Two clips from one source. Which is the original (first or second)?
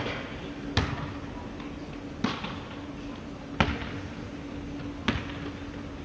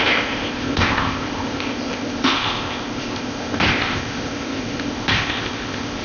first